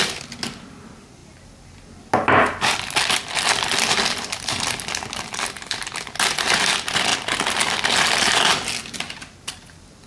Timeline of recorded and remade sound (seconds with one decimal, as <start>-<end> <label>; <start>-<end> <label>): 0.0-10.1 recorded